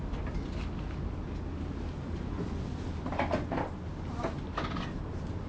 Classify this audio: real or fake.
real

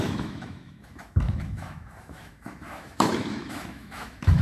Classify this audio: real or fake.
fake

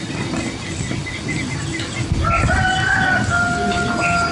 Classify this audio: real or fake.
real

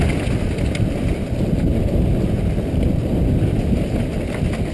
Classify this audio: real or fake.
real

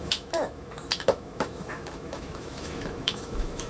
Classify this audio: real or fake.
fake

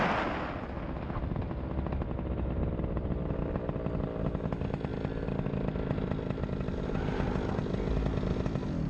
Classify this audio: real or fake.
real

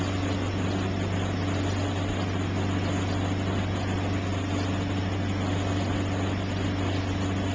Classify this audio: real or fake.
real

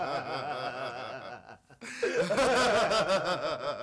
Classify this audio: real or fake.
real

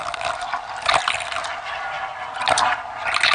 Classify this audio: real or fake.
real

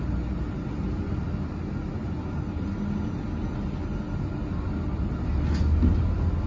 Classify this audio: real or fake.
real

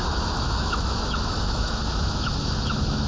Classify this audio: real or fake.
fake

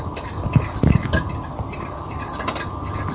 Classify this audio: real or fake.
real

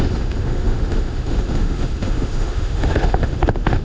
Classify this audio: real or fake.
fake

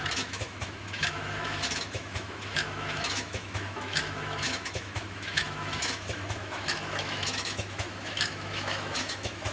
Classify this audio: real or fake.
fake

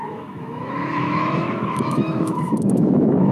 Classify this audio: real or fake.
fake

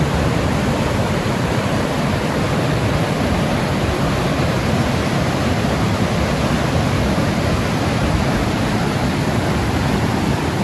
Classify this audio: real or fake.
real